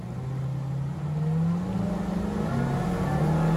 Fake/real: real